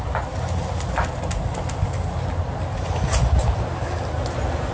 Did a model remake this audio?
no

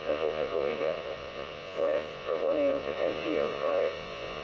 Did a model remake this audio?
yes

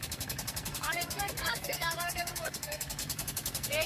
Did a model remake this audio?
yes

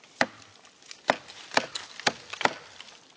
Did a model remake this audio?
no